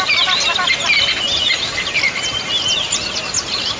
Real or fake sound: real